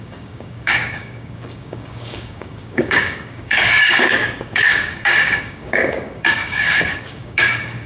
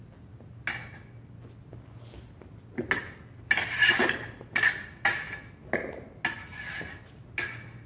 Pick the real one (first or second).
second